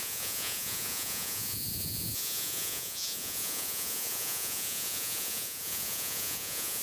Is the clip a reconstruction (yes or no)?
yes